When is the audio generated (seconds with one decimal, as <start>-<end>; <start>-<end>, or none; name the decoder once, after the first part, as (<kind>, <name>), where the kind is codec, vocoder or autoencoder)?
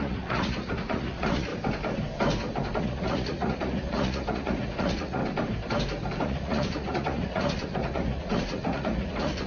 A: 0.0-1.5 (vocoder, Vocos); 2.8-5.2; 6.2-9.5